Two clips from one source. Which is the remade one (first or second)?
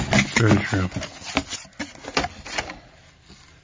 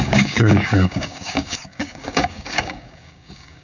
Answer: second